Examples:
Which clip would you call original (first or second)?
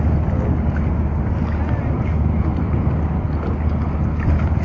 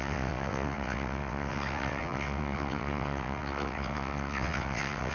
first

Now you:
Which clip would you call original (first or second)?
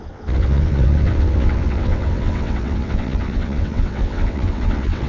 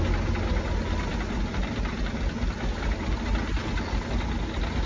second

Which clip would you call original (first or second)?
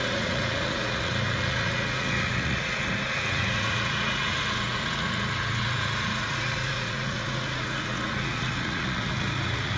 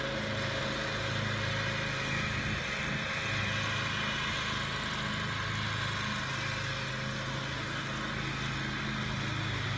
second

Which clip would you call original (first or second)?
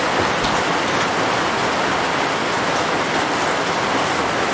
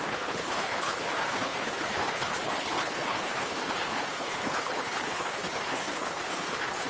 first